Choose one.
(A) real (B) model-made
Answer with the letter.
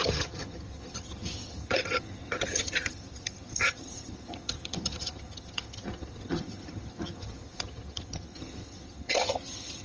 B